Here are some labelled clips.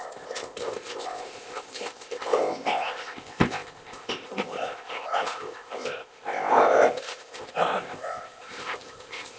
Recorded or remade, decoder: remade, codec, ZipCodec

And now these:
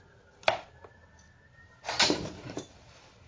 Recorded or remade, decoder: recorded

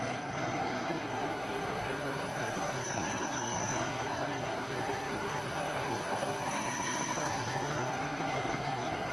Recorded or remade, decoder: remade, codec, SNAC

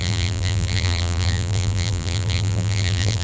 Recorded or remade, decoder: remade, vocoder, BigVGAN v2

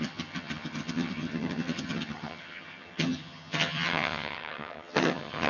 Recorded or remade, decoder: remade, vocoder, HiFi-GAN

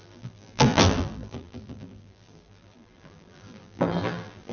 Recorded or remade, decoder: remade, vocoder, BigVGAN v2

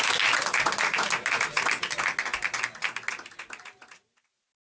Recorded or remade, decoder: recorded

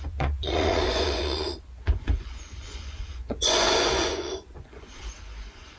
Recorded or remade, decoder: remade, vocoder, Vocos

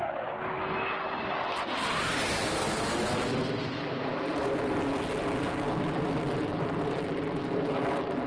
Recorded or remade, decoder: recorded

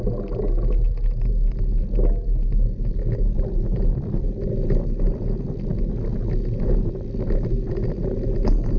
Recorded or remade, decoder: recorded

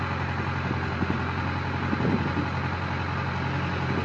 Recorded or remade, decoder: recorded